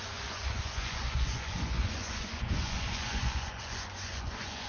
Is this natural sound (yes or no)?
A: no